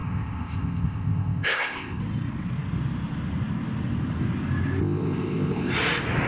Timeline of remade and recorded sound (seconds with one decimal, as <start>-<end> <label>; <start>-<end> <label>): 0.0-2.0 remade; 2.0-4.8 recorded; 4.8-5.7 remade; 5.7-6.3 recorded